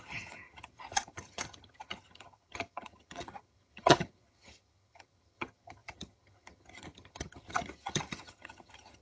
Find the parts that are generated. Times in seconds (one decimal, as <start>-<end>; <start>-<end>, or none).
0.0-9.0

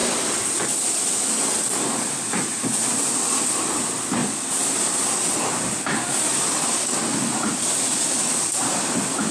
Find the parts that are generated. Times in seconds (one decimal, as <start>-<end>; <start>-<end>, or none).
1.5-9.3

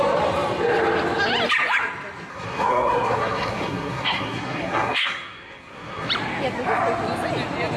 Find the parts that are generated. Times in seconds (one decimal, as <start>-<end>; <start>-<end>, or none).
2.3-6.1